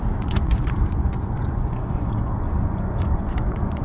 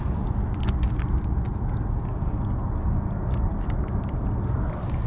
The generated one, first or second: first